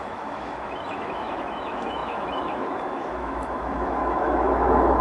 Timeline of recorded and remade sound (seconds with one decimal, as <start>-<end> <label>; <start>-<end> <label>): 0.0-5.0 remade